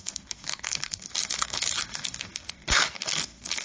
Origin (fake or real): fake